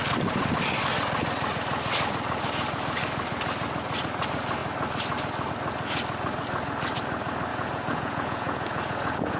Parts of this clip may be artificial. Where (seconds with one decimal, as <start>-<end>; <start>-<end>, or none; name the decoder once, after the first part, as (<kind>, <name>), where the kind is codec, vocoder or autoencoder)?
7.5-9.4 (vocoder, Vocos)